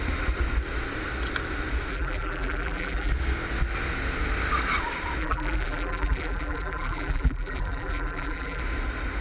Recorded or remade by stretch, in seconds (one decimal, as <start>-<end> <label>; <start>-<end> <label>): 0.0-1.9 recorded; 1.9-3.1 remade; 3.1-5.2 recorded; 5.2-8.6 remade; 8.6-9.2 recorded